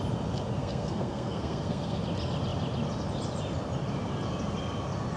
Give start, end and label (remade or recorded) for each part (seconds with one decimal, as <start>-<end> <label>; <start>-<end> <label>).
0.0-0.6 recorded; 0.6-2.0 remade; 2.0-5.2 recorded